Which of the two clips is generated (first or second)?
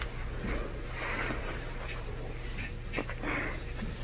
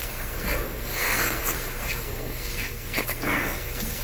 second